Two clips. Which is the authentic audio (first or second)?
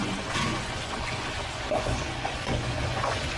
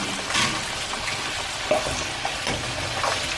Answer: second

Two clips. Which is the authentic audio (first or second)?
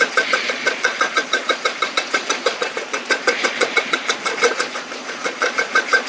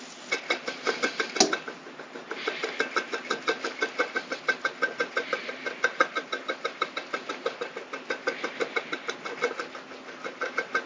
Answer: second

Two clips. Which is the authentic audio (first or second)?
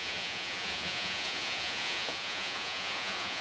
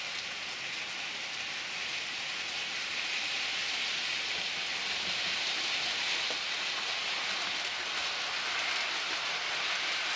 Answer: second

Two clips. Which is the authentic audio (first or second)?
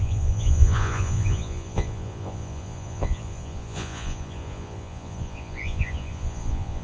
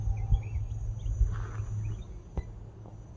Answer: second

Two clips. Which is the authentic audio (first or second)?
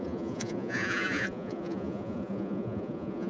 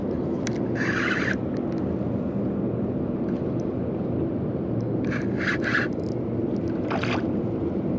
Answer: second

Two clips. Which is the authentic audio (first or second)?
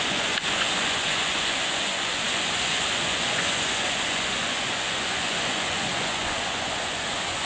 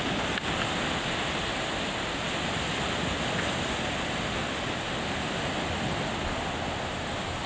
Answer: second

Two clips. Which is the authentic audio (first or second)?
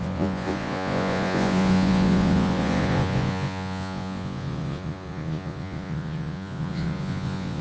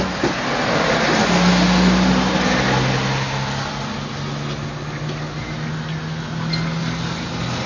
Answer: second